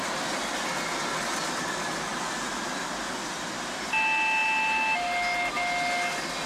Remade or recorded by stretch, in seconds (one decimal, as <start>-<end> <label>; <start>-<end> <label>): 0.0-6.5 recorded